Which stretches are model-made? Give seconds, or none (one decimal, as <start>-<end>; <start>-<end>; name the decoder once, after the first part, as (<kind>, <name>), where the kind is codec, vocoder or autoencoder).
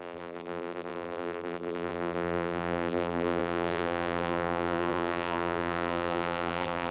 0.0-6.9 (vocoder, BigVGAN v2)